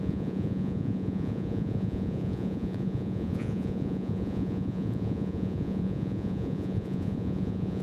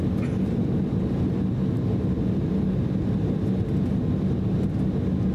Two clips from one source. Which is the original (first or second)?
second